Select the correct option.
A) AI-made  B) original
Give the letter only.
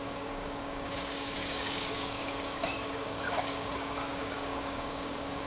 A